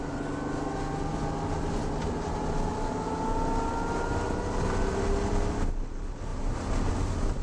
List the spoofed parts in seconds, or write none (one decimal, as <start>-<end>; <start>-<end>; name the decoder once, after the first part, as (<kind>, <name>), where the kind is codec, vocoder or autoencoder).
none